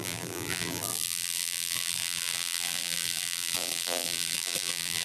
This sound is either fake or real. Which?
fake